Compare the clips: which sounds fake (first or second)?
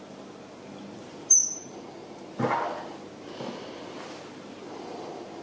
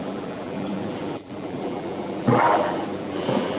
second